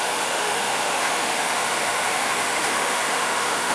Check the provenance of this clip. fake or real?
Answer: fake